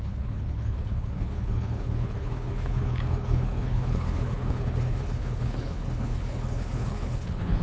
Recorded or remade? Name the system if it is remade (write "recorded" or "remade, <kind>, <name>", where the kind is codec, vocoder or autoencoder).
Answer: remade, codec, HILCodec